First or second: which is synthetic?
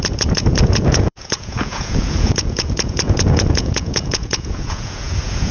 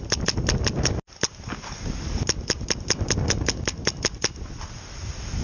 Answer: first